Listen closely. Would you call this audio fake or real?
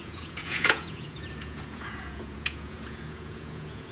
fake